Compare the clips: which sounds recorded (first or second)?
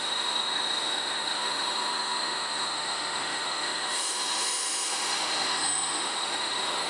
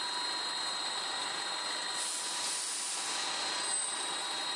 second